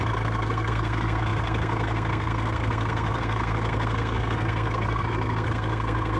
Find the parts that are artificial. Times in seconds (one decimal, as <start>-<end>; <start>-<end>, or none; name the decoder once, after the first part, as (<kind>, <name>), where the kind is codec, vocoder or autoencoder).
0.0-6.2 (codec, SNAC)